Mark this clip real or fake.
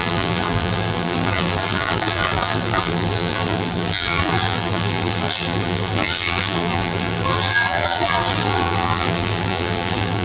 fake